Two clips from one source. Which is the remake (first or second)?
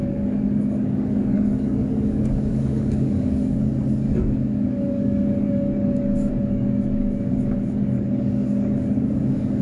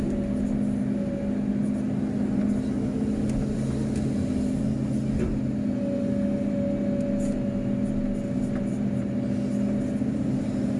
first